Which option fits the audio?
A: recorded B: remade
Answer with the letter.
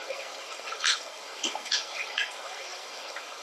B